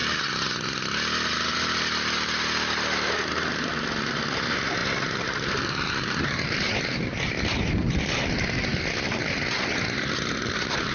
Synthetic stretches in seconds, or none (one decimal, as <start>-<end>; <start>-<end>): none